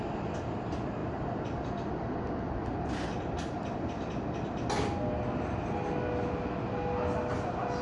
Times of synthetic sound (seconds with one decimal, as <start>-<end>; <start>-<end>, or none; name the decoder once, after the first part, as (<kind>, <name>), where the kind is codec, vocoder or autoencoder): none